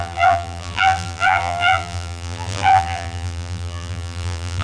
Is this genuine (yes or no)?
no